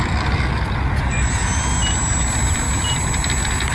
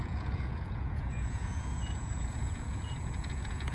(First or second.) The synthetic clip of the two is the second